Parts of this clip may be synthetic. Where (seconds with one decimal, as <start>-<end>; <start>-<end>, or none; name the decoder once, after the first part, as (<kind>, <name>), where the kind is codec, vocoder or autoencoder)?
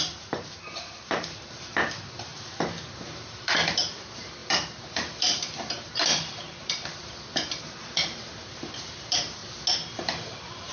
0.0-9.4 (vocoder, BigVGAN v2); 9.9-10.7